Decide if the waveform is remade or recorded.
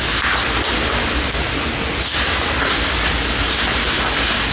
recorded